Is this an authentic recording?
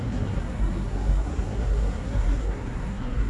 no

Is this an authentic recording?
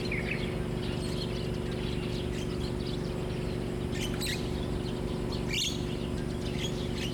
yes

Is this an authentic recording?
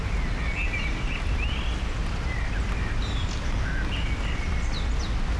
yes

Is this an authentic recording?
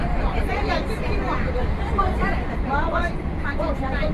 no